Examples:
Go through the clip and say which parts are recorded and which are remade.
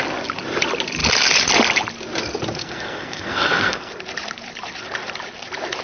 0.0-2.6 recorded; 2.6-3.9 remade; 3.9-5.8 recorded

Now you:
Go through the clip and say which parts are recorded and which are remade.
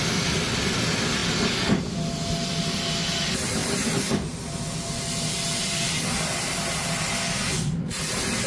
0.0-1.2 remade; 1.2-3.2 recorded; 3.2-3.6 remade; 3.6-7.6 recorded; 7.6-8.5 remade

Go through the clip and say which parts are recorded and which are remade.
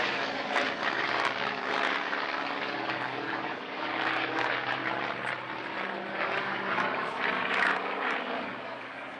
0.0-4.8 remade; 4.8-6.1 recorded; 6.1-9.2 remade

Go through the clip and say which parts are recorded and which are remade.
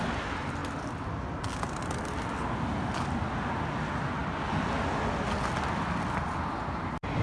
0.0-7.2 recorded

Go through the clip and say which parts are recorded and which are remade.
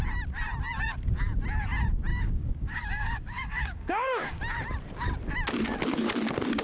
0.0-2.1 recorded; 2.1-4.4 remade; 4.4-6.6 recorded